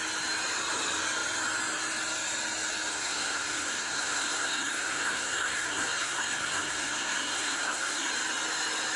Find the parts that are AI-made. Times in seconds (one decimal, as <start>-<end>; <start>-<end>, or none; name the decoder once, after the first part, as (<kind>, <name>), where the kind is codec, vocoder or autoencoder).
2.9-8.1 (codec, SNAC)